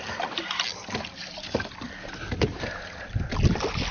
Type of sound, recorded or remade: recorded